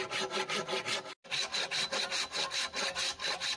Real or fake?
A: real